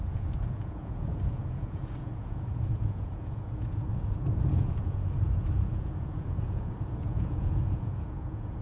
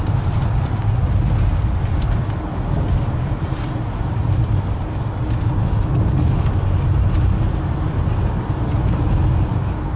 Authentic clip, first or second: second